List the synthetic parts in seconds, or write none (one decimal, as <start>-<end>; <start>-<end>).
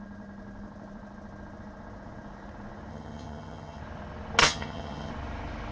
2.9-3.8; 4.4-5.1